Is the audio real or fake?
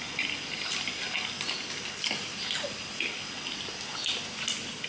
real